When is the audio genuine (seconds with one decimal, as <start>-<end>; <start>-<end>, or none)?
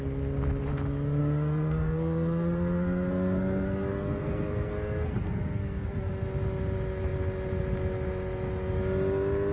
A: 0.0-1.2; 6.1-9.5